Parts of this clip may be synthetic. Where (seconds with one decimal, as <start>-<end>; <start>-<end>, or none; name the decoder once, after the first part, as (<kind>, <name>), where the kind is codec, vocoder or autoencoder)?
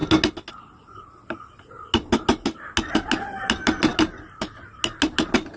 none